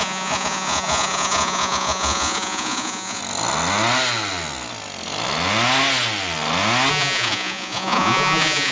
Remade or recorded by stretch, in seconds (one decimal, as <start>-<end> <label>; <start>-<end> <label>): 0.0-3.2 remade; 3.2-6.9 recorded; 6.9-8.7 remade